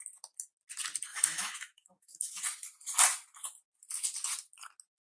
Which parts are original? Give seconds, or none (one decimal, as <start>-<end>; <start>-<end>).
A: 0.0-1.1; 2.4-5.0